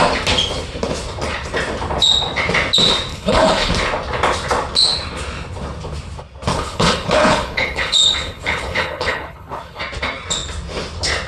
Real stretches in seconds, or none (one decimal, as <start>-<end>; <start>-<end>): 0.0-3.1; 3.7-6.5; 9.8-11.3